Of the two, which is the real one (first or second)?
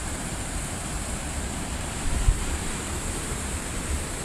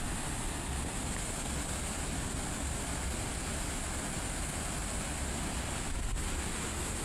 second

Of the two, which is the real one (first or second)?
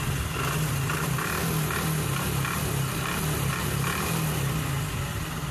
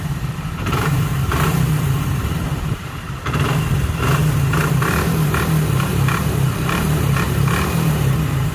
first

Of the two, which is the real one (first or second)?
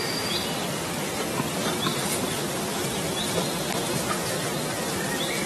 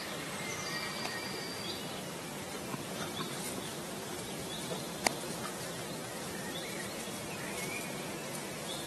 first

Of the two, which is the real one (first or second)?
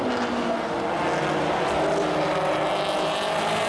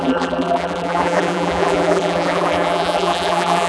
first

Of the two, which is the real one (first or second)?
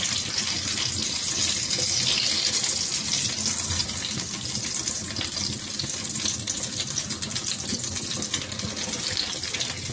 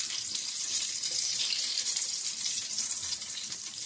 first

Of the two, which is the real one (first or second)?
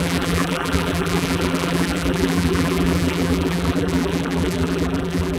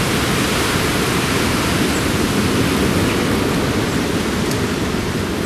second